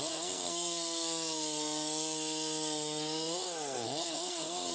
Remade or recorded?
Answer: remade